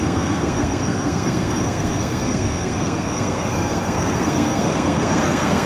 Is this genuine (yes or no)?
no